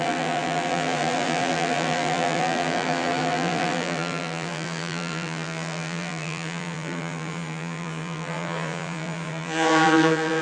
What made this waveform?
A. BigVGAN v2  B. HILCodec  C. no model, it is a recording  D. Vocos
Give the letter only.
A